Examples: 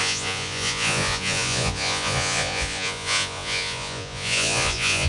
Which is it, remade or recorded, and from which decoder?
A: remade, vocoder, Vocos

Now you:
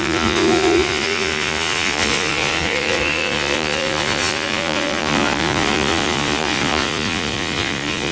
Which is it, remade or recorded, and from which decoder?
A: remade, vocoder, Vocos